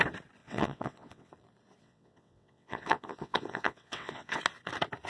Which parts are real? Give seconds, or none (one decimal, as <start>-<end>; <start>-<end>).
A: 0.0-0.4; 1.3-1.8; 4.4-5.1